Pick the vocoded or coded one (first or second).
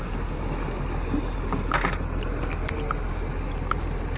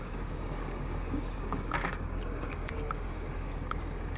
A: second